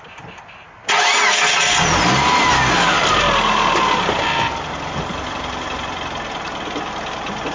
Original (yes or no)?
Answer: yes